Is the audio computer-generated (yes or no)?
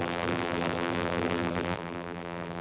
yes